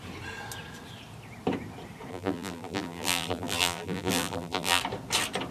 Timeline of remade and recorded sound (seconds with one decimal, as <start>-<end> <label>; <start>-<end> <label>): 0.0-2.1 recorded; 2.1-4.8 remade; 4.8-5.5 recorded